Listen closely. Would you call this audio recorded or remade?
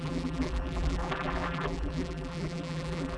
remade